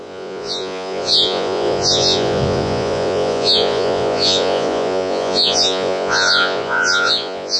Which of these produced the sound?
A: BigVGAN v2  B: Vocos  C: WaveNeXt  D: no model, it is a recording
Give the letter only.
B